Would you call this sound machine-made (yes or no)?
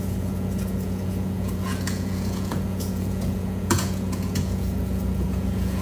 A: yes